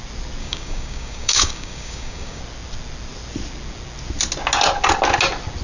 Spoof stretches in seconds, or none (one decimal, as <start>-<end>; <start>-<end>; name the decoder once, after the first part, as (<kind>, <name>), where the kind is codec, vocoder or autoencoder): 0.4-2.4 (codec, DAC)